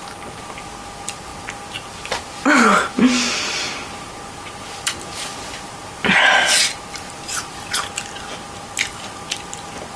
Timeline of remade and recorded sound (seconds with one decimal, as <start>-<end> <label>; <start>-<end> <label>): 0.0-10.0 recorded